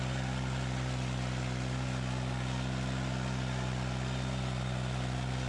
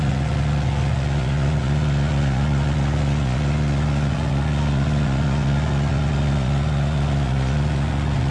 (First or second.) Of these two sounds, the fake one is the second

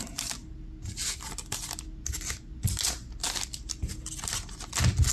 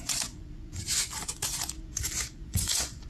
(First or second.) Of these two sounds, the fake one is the second